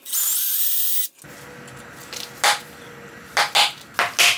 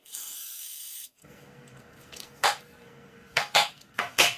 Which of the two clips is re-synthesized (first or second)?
second